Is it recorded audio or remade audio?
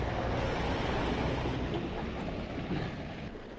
recorded